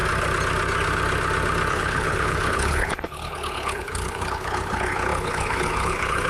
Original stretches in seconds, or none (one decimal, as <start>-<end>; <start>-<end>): 0.0-1.7